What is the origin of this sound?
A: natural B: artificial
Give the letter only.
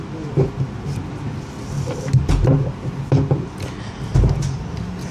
A